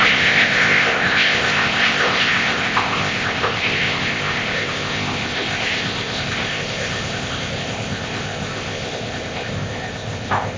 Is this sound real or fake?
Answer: fake